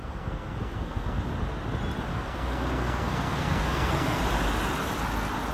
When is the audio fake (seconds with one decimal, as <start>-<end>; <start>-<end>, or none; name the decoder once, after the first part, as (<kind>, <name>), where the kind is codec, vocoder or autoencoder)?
0.0-1.2 (codec, SNAC); 2.1-4.2